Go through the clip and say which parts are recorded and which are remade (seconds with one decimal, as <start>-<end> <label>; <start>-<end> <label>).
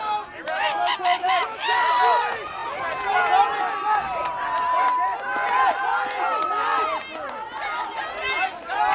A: 0.0-8.9 recorded